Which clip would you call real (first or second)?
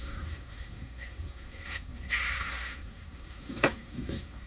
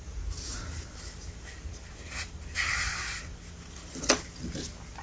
second